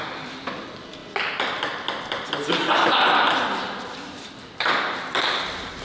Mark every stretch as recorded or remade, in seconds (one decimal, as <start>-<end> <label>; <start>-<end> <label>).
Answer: 0.0-1.0 remade; 1.0-4.2 recorded; 4.2-5.8 remade